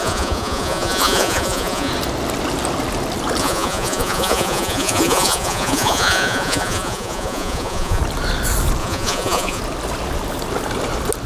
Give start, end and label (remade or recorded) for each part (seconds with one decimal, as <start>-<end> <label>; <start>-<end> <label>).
0.0-1.9 remade; 1.9-3.4 recorded; 3.4-8.0 remade; 8.0-8.8 recorded; 8.8-9.6 remade; 9.6-11.3 recorded